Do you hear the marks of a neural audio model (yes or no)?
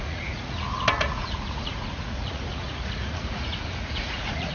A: yes